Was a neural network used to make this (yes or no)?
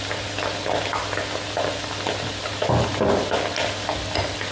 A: no